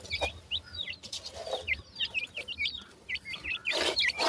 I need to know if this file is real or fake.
real